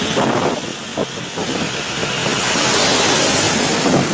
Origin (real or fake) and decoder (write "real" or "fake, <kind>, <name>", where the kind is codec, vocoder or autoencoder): real